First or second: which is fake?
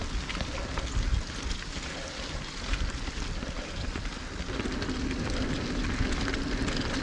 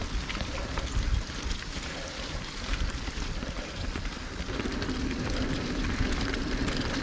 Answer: second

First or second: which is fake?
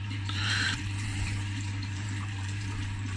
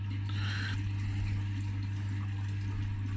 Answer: first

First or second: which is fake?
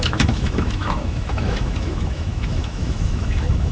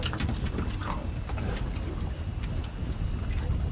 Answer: first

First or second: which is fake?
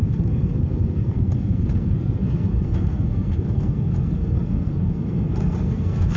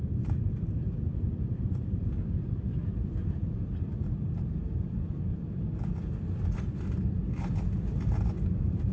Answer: first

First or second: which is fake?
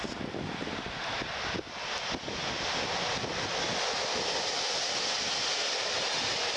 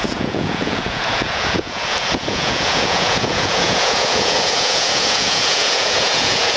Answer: second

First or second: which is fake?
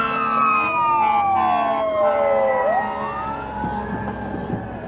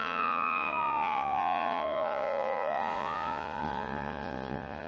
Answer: second